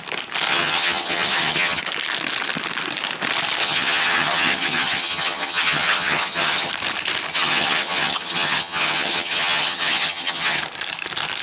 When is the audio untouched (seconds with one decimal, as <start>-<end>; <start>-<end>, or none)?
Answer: 0.0-0.5; 1.8-3.6; 6.7-7.3; 10.6-11.4